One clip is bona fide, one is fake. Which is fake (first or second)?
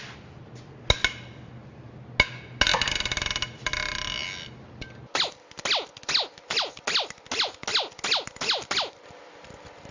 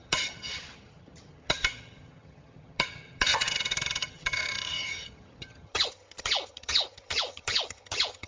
second